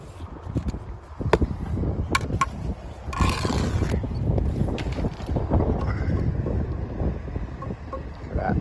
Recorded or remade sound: recorded